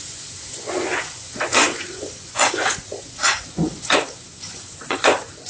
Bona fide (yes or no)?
no